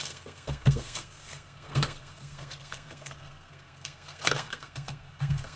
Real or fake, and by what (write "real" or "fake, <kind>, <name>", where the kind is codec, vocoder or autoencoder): fake, codec, SNAC